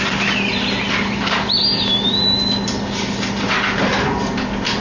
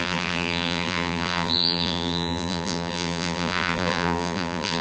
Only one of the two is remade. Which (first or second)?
second